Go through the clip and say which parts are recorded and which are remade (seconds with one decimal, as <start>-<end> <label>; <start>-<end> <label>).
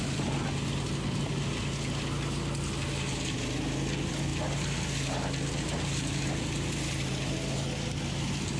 0.0-8.6 recorded